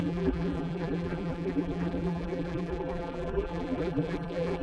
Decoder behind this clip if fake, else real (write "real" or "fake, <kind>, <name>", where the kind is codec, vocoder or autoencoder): fake, vocoder, BigVGAN v2